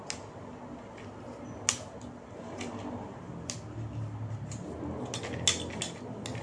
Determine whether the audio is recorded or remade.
recorded